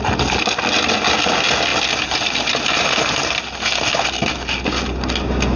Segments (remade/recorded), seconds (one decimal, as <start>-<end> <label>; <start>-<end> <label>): 0.0-5.6 recorded